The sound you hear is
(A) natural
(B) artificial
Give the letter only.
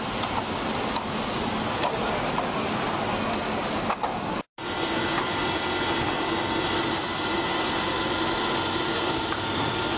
A